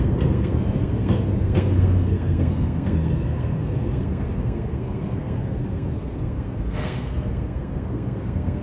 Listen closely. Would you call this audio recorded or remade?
remade